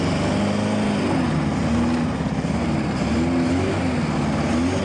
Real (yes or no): yes